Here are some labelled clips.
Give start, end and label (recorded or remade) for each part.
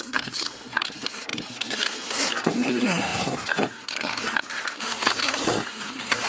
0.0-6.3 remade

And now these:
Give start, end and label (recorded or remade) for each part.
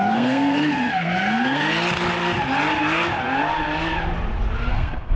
0.0-1.6 remade; 1.6-4.7 recorded; 4.7-5.2 remade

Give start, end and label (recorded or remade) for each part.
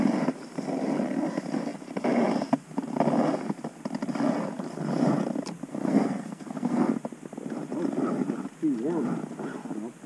0.0-5.7 recorded; 5.7-6.9 remade; 6.9-10.1 recorded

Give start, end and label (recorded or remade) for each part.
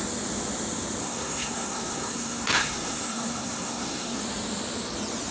0.0-1.0 recorded; 1.0-4.2 remade; 4.2-5.3 recorded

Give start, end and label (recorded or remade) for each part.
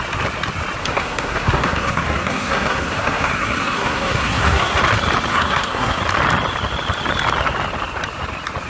0.0-0.8 recorded; 0.8-4.8 remade; 4.8-5.3 recorded; 5.3-6.0 remade; 6.0-8.7 recorded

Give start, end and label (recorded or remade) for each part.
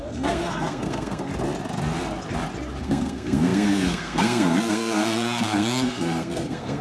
0.0-1.3 remade; 1.3-2.8 recorded; 2.8-6.8 remade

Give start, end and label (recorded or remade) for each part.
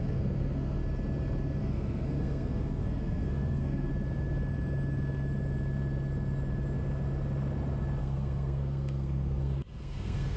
0.0-0.8 remade; 0.8-1.6 recorded; 1.6-3.9 remade; 3.9-8.0 recorded; 8.0-10.4 remade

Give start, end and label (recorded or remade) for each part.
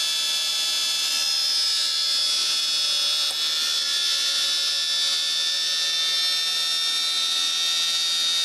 0.0-8.4 recorded